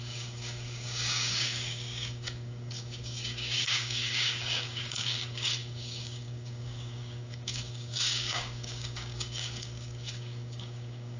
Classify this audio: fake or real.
fake